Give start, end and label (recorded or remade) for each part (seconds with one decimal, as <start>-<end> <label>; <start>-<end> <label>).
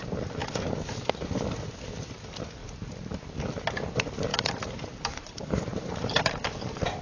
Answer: 0.0-4.3 recorded; 4.3-6.3 remade; 6.3-7.0 recorded